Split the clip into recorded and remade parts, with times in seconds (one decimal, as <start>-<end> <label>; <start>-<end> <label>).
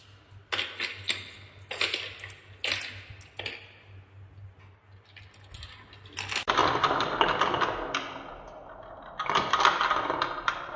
0.0-10.8 recorded